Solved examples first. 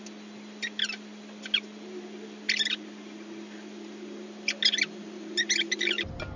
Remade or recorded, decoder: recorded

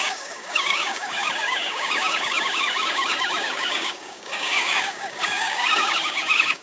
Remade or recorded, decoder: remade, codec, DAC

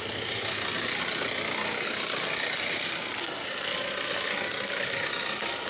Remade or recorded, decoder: recorded